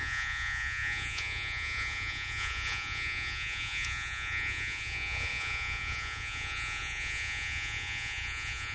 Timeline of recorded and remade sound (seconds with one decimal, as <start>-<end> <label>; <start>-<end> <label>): 0.0-8.7 remade